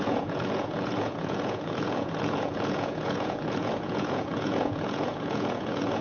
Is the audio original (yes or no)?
no